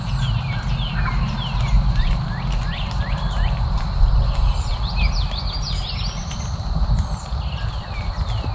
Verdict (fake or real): real